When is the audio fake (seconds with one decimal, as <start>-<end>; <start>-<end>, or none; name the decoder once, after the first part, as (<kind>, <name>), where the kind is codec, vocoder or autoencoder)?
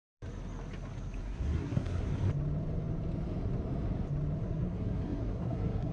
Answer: 1.2-2.1 (codec, SNAC); 4.4-5.9